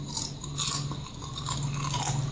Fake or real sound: real